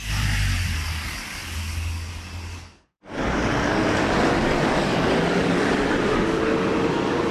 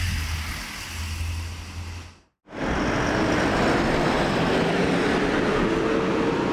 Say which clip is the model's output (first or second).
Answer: first